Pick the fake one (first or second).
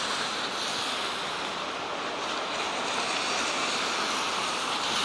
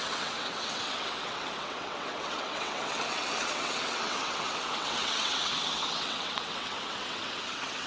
second